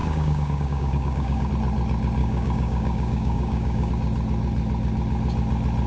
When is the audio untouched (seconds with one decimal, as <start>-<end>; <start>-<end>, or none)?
1.5-2.2; 3.9-5.9